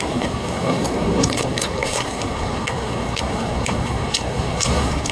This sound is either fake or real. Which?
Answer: fake